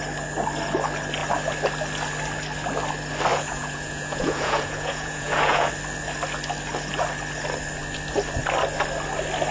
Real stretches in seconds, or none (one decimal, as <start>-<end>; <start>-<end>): 0.0-3.3; 5.7-9.5